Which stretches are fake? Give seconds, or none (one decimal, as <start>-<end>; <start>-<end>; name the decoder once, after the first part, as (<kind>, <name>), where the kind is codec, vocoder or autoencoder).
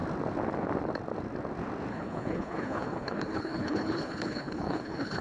1.9-5.2 (codec, HILCodec)